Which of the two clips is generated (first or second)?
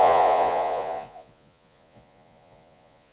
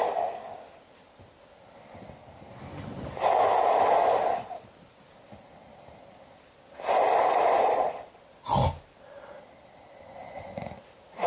first